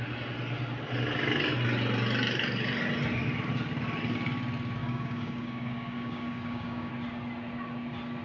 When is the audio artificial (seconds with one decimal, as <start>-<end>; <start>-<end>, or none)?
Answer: 4.8-6.9